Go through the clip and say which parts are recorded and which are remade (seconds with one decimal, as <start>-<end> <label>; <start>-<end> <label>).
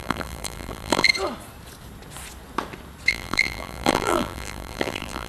0.0-1.1 remade; 1.1-3.1 recorded; 3.1-5.3 remade